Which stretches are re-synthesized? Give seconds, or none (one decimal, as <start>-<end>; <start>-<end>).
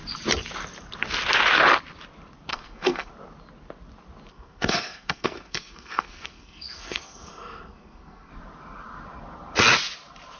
2.5-3.1; 4.3-8.3